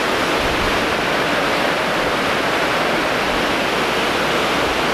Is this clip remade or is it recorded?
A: recorded